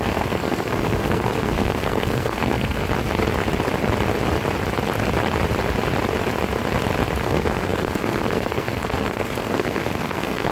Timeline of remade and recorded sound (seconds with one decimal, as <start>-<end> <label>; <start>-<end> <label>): 0.0-2.8 remade; 2.8-7.2 recorded; 7.2-10.5 remade